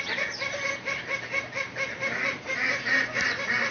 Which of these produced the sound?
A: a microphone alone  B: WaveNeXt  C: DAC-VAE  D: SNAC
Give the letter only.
A